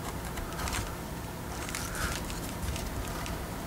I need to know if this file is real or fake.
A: fake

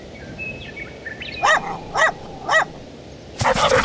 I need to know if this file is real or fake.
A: real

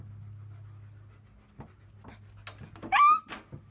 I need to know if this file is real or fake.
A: real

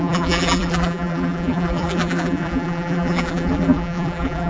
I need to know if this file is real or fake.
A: fake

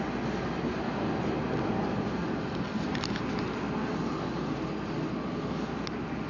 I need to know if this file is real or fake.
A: real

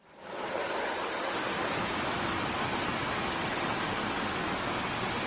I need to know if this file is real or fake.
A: real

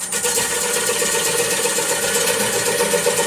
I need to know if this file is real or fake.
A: real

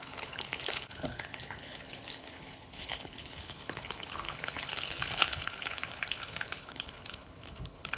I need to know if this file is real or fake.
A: fake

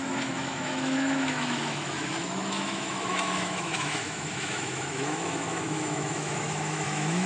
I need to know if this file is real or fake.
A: fake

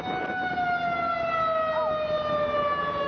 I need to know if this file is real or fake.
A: real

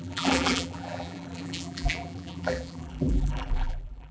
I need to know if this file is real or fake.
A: fake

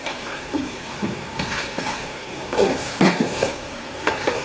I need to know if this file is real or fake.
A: fake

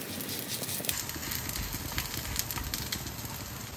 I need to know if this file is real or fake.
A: real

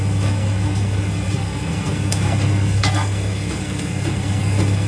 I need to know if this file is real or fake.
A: fake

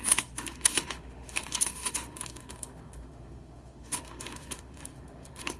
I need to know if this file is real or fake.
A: fake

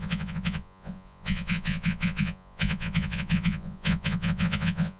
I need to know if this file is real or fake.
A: fake